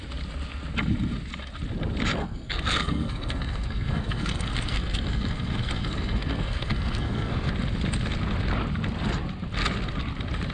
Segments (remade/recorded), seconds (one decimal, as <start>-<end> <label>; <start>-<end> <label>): 0.0-2.2 recorded; 2.2-7.5 remade; 7.5-10.5 recorded

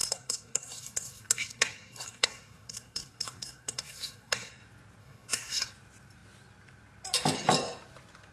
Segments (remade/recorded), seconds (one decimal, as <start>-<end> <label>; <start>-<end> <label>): 0.0-4.5 remade; 4.5-5.0 recorded; 5.0-5.7 remade; 5.7-8.3 recorded

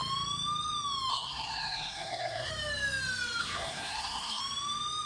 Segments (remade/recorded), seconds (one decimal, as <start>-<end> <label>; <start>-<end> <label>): 0.0-1.1 recorded; 1.1-2.5 remade; 2.5-3.4 recorded; 3.4-4.4 remade; 4.4-5.1 recorded

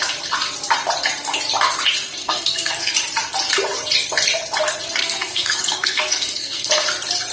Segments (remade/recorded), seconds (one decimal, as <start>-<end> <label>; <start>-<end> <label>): 0.0-2.2 recorded; 2.2-2.9 remade; 2.9-5.0 recorded; 5.0-6.7 remade; 6.7-7.3 recorded

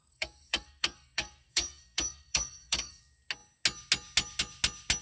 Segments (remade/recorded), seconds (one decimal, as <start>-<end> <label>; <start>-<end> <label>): 0.0-3.0 remade; 3.0-5.0 recorded

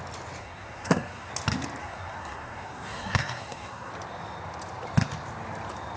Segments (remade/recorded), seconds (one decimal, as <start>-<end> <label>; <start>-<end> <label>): 0.0-0.4 recorded; 0.4-1.3 remade; 1.3-1.8 recorded; 1.8-3.9 remade; 3.9-6.0 recorded